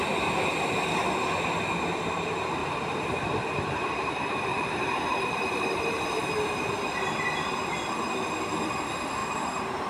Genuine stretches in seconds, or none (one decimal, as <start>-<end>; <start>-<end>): 0.0-2.6; 6.2-9.2